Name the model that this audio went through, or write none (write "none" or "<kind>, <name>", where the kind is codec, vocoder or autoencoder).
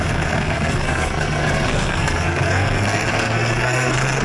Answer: codec, SNAC